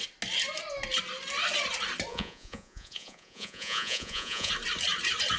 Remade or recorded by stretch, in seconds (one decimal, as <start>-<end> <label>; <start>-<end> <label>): 0.0-2.1 recorded; 2.1-4.5 remade; 4.5-5.4 recorded